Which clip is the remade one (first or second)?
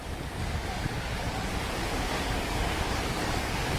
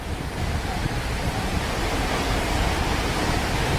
first